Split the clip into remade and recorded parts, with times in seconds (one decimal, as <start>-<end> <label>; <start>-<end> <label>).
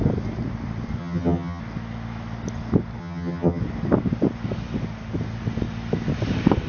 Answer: 0.0-1.0 recorded; 1.0-1.6 remade; 1.6-3.0 recorded; 3.0-3.6 remade; 3.6-6.7 recorded